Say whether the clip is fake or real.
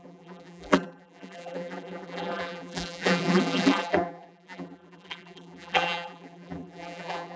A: fake